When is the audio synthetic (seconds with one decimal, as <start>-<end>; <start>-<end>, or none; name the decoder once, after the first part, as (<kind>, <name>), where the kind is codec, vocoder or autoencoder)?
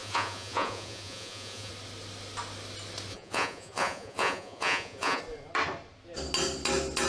0.0-1.7 (vocoder, Vocos); 3.1-5.2